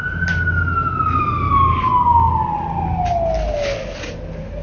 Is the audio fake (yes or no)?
no